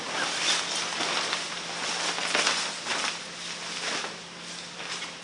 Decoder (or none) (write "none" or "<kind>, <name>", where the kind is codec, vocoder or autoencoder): none